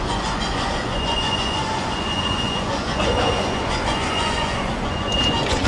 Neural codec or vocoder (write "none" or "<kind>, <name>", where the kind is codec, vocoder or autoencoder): vocoder, Vocos